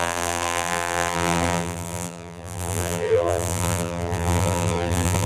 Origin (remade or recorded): remade